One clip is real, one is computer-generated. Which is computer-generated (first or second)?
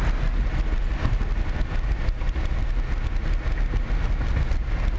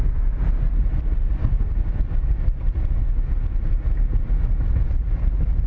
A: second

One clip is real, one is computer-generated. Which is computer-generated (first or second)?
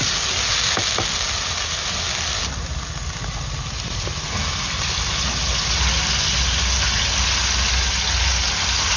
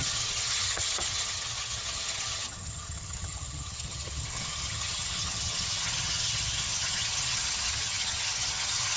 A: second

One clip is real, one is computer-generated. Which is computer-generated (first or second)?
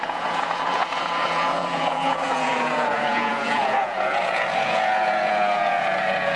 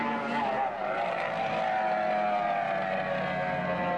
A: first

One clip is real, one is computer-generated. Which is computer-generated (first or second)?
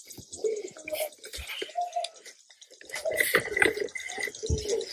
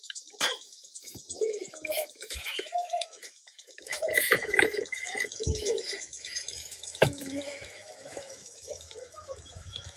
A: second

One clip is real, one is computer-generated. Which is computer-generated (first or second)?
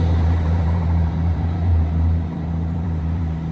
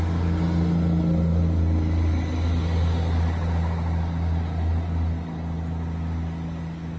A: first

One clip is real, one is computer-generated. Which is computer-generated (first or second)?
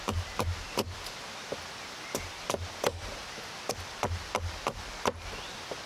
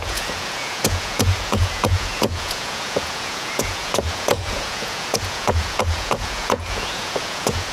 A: second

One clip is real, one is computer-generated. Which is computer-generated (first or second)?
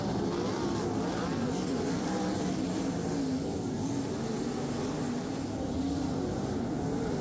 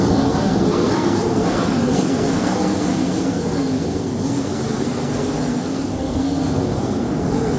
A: second